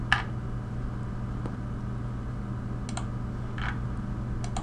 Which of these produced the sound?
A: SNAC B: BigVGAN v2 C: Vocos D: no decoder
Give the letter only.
D